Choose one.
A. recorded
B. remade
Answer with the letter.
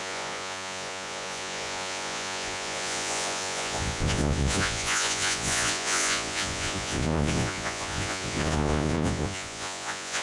B